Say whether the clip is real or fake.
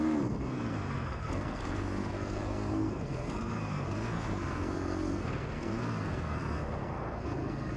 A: fake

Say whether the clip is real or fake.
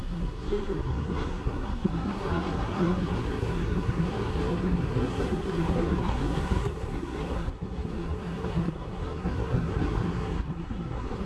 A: fake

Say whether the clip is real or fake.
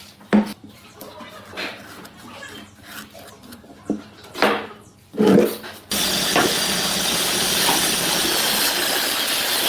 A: real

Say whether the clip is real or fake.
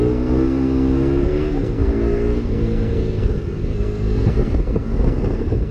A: fake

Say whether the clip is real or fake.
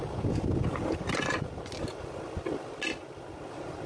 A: real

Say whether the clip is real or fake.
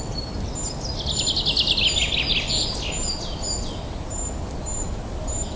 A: real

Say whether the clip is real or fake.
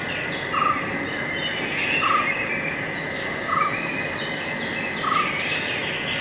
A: real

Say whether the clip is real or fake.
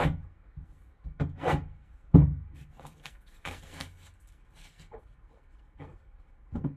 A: fake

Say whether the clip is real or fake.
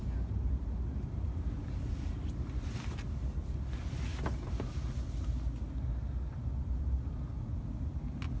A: real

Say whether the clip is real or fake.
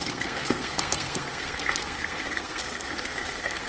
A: fake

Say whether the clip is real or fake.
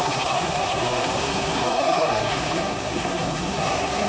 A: fake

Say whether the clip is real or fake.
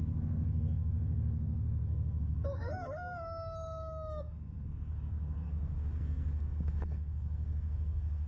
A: fake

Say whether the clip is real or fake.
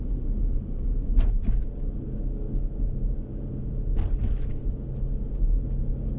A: real